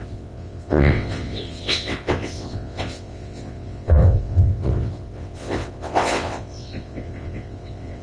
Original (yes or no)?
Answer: no